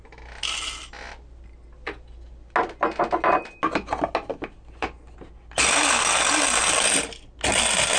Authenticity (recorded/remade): recorded